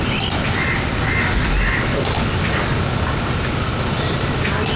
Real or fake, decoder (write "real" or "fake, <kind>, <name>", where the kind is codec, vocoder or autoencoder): real